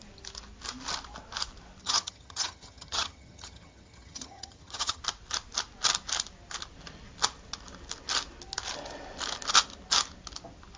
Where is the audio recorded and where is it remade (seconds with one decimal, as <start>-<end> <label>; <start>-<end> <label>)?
0.0-1.8 recorded; 1.8-5.0 remade; 5.0-10.8 recorded